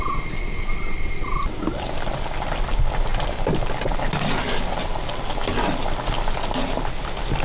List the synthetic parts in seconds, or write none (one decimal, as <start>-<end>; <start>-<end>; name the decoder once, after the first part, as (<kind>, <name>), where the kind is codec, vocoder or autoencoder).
none